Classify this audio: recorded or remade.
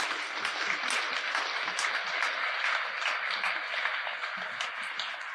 recorded